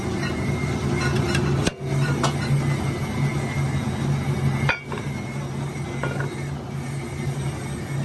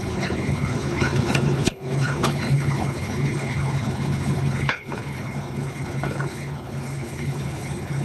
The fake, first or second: second